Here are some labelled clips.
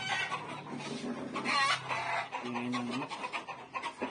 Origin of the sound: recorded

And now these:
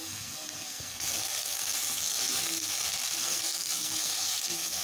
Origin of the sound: remade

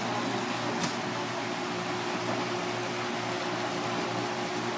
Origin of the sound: recorded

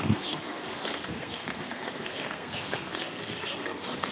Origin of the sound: remade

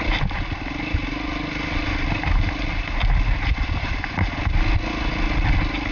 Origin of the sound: recorded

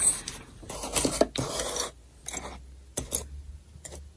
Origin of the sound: recorded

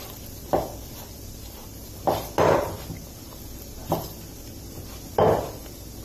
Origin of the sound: recorded